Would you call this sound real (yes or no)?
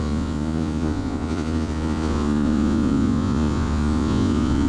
no